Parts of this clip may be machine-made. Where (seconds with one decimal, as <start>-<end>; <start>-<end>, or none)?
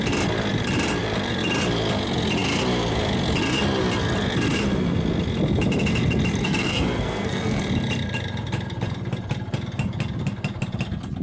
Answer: 6.4-7.6